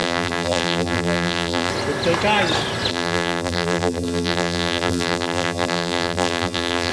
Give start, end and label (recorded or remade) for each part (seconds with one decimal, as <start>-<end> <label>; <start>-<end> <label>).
0.0-1.7 remade; 1.7-2.9 recorded; 2.9-6.9 remade